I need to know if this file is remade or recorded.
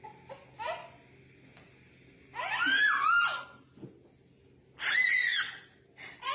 recorded